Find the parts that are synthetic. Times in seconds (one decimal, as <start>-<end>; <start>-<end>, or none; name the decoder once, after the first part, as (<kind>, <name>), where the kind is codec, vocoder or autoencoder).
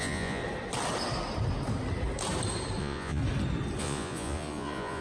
0.0-0.4 (vocoder, Vocos); 2.8-3.2; 3.8-5.0